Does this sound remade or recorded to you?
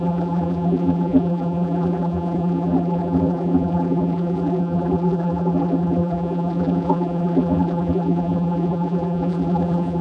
remade